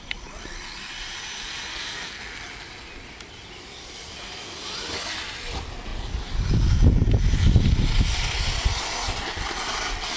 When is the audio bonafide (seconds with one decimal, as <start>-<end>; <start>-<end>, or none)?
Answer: 0.0-1.7; 2.2-10.2

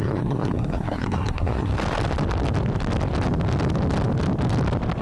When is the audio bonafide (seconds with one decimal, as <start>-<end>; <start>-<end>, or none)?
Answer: 1.7-5.0

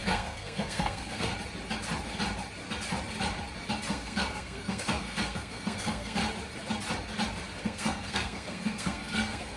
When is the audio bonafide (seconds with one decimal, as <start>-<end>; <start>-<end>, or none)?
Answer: 1.3-3.9; 6.2-7.6

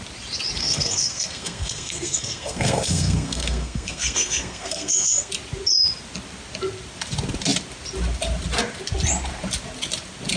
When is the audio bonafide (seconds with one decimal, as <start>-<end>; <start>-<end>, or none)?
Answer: 0.0-0.6; 5.3-10.4

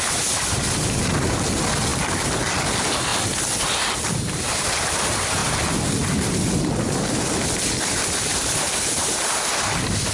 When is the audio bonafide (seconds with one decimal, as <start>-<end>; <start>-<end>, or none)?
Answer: 0.0-10.1

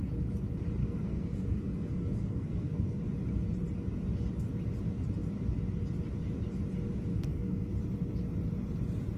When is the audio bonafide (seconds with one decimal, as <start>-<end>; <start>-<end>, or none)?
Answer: 0.0-0.8; 3.0-7.1; 7.7-9.2

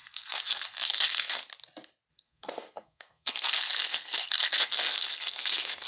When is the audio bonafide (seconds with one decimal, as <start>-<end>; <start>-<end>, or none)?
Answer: 1.4-2.1